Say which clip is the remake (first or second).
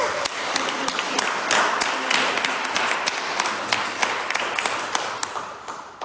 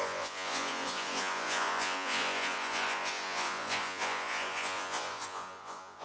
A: second